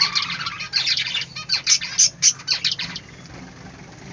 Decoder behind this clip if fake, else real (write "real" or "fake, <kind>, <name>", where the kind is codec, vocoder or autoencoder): real